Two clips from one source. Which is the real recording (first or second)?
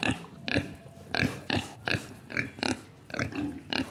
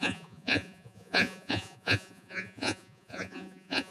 first